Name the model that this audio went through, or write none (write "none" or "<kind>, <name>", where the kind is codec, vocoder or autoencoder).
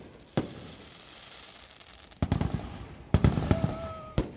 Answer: vocoder, BigVGAN v2